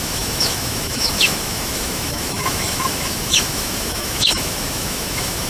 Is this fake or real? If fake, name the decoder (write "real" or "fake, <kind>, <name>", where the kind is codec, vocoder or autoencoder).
fake, autoencoder, DAC-VAE